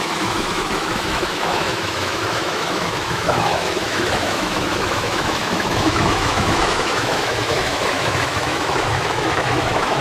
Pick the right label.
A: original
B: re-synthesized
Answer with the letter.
B